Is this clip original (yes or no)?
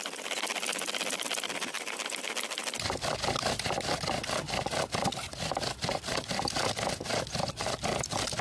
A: yes